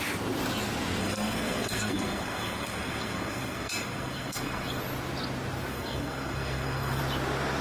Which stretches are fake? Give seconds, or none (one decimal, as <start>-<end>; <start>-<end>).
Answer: 1.0-4.8; 5.7-7.0

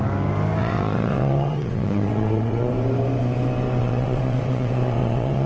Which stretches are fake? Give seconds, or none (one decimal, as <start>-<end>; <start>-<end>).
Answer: 0.6-2.7; 3.8-5.5